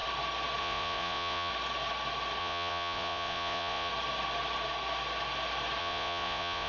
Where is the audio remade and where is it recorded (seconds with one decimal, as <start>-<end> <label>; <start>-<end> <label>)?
0.0-0.6 recorded; 0.6-1.5 remade; 1.5-2.4 recorded; 2.4-3.9 remade; 3.9-5.8 recorded; 5.8-6.7 remade